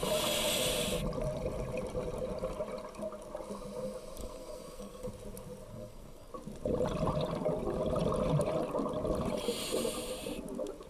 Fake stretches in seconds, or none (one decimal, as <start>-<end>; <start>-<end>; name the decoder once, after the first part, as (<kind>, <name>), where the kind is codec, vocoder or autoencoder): 4.2-5.1 (codec, SNAC); 5.7-6.3